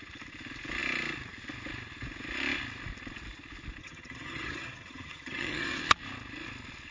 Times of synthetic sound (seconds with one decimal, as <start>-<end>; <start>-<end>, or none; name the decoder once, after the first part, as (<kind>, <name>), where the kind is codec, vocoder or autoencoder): 3.8-5.8 (vocoder, HiFi-GAN)